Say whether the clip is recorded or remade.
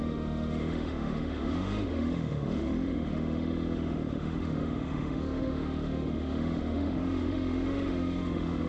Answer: remade